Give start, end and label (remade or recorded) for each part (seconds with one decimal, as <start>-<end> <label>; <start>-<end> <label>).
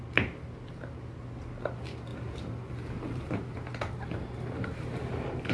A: 0.0-5.5 remade